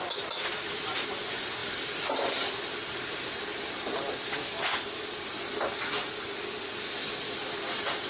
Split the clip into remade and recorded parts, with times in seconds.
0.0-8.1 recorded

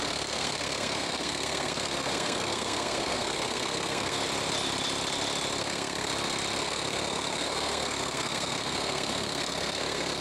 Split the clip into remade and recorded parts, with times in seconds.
0.0-4.2 remade; 4.2-5.6 recorded; 5.6-6.1 remade; 6.1-6.6 recorded; 6.6-10.2 remade

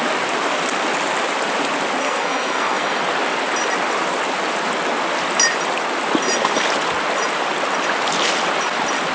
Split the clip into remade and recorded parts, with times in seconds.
0.0-2.0 recorded; 2.0-3.0 remade; 3.0-9.1 recorded